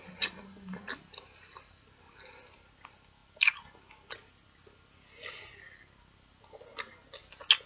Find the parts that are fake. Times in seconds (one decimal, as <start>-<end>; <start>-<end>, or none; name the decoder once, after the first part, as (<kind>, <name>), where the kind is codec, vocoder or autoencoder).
none